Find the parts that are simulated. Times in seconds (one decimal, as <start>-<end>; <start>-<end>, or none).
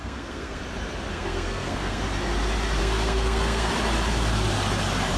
0.0-0.6; 1.1-2.0; 2.8-3.7